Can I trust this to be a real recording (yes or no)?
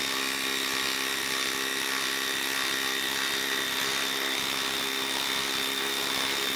yes